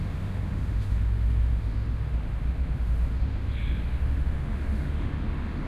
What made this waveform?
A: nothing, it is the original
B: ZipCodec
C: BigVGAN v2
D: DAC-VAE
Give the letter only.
D